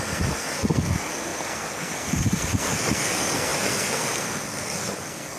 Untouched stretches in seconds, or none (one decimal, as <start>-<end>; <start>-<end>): none